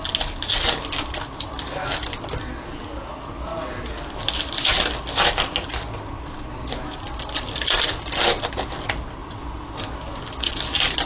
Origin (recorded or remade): recorded